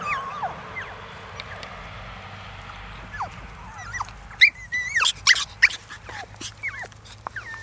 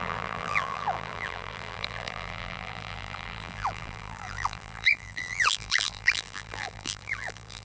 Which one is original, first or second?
first